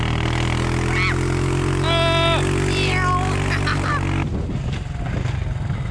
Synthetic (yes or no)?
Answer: no